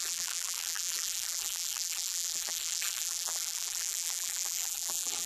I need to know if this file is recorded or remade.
remade